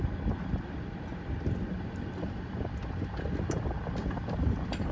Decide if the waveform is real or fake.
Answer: real